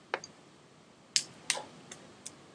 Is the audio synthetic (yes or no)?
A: no